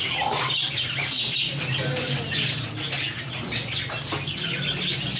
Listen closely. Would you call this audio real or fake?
real